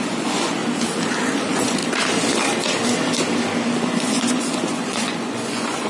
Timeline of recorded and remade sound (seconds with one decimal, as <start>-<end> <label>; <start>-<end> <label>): 0.0-0.6 remade; 0.6-1.2 recorded; 1.2-1.8 remade; 1.8-3.8 recorded; 3.8-5.9 remade